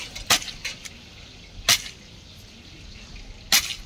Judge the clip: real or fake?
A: real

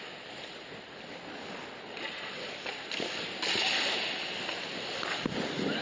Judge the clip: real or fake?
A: real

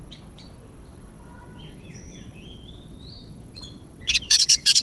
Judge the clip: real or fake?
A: fake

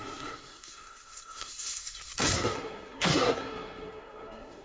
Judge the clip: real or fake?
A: fake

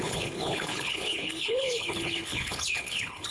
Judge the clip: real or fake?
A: fake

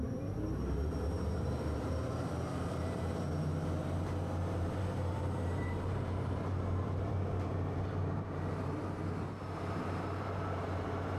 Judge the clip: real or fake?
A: fake